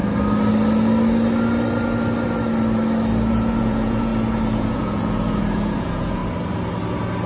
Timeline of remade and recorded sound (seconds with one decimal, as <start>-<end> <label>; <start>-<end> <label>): 0.0-3.3 recorded; 3.3-4.1 remade; 4.1-4.6 recorded; 4.6-6.2 remade; 6.2-7.3 recorded